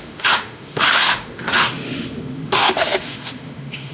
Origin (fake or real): fake